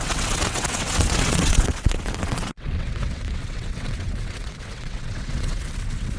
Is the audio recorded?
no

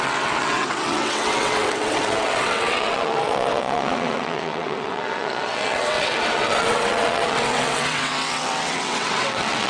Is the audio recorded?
no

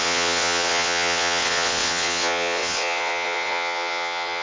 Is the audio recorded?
no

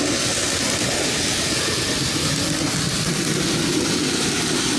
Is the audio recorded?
yes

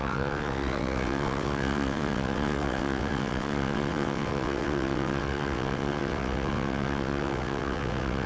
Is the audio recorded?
no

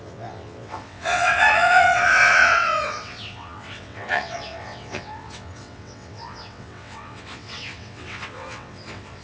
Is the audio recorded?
no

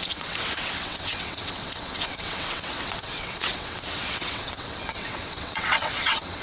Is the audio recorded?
no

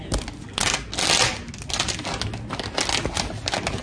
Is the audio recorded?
yes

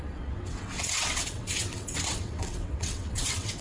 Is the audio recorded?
no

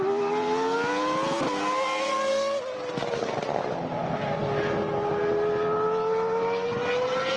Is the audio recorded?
yes